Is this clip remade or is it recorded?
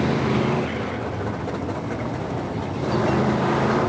recorded